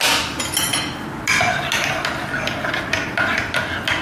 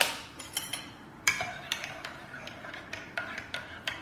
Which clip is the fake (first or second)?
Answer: second